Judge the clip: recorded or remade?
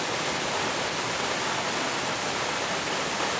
recorded